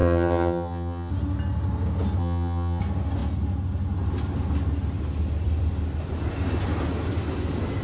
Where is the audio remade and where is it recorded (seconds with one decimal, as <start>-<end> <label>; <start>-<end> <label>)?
0.0-1.1 remade; 1.1-2.2 recorded; 2.2-2.8 remade; 2.8-7.8 recorded